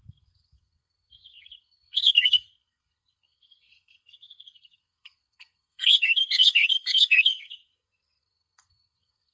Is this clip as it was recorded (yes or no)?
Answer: no